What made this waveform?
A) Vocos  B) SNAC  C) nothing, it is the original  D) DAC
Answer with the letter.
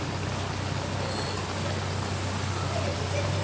C